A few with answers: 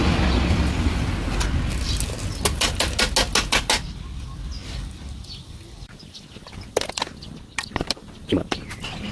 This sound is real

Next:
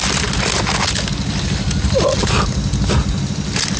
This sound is real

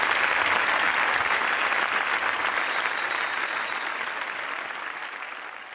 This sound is real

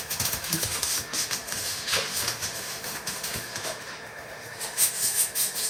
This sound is fake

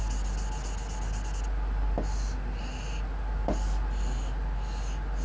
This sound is real